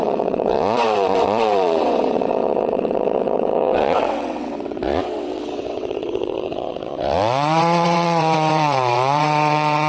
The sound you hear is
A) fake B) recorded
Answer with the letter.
A